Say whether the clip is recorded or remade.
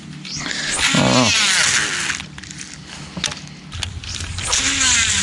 recorded